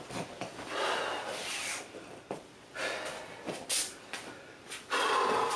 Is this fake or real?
real